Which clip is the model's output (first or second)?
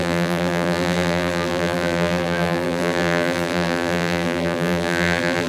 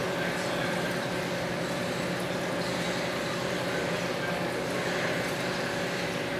first